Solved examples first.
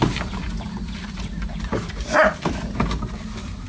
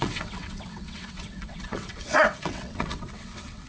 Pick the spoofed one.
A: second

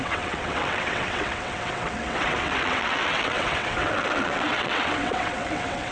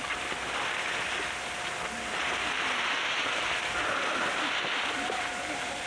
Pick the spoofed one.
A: first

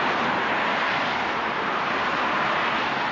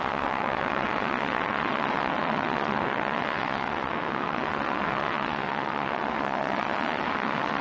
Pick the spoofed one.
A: second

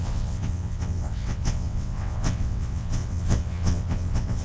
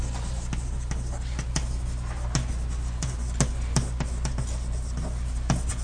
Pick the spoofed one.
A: first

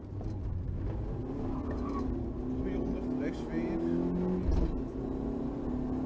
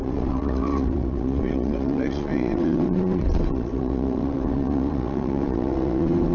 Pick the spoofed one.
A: second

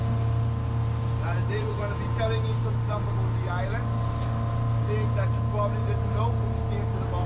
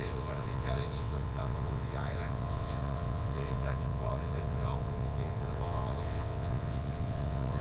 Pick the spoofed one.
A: second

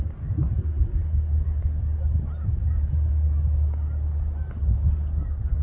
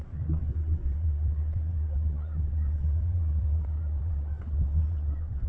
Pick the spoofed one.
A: second